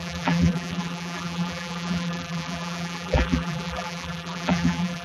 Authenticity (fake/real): fake